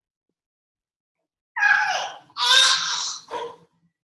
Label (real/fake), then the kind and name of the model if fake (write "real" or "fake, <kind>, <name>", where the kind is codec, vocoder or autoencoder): real